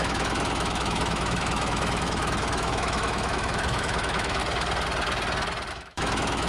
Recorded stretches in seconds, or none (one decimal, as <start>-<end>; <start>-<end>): 4.4-5.7